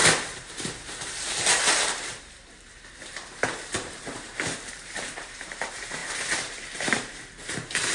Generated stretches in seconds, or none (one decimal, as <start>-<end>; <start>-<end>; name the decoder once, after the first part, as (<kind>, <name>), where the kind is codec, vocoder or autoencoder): 0.0-7.9 (vocoder, BigVGAN v2)